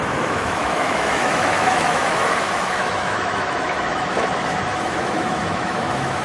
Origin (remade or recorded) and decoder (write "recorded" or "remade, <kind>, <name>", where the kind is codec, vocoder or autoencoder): remade, autoencoder, DAC-VAE